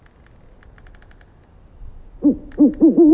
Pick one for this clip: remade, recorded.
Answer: recorded